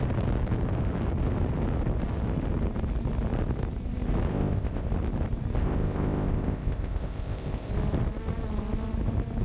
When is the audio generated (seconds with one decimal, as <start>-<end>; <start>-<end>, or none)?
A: 4.3-4.9; 5.6-7.7